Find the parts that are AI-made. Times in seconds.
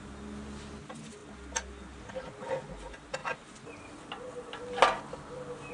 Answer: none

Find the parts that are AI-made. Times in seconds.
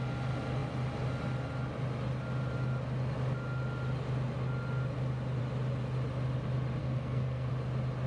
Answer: 6.8-7.5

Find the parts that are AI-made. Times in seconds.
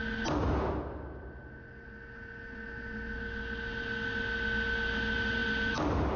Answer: none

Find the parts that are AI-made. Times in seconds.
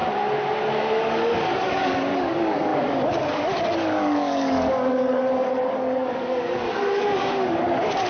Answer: 0.7-8.1